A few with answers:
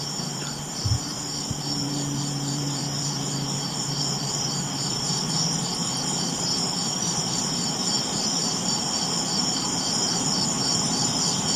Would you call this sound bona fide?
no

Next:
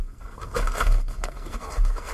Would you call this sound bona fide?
no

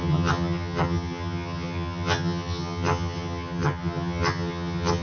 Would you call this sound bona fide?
no